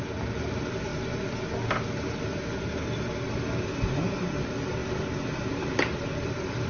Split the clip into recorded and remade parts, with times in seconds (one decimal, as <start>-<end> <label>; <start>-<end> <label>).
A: 0.0-0.9 remade; 0.9-3.3 recorded; 3.3-4.8 remade; 4.8-5.5 recorded; 5.5-6.7 remade